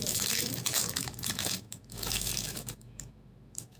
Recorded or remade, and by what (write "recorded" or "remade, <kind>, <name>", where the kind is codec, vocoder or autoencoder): remade, autoencoder, DAC-VAE